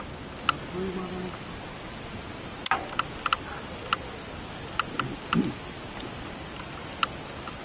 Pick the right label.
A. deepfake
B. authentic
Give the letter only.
B